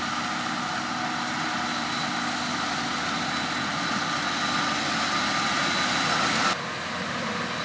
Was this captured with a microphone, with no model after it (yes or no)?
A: yes